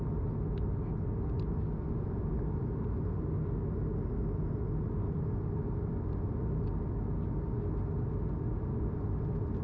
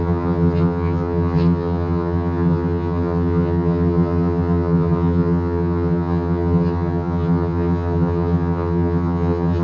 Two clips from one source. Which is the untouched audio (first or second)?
first